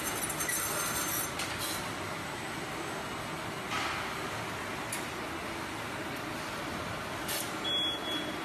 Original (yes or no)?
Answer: yes